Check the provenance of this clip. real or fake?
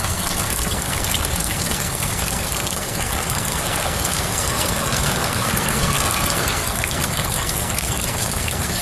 fake